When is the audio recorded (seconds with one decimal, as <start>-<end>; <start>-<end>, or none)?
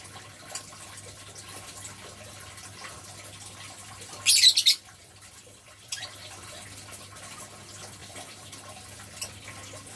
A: 0.0-5.0; 6.6-8.0; 9.0-10.0